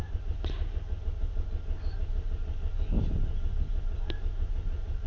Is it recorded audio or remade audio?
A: recorded